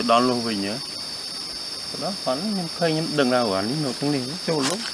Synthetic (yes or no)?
no